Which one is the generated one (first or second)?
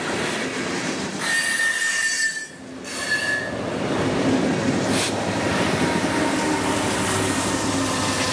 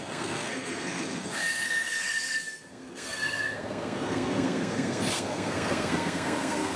second